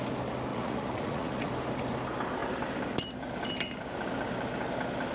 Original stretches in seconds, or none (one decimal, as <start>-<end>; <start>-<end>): 0.0-0.5; 1.5-5.1